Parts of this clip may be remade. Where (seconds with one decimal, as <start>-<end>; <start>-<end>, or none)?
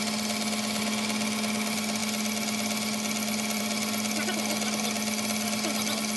none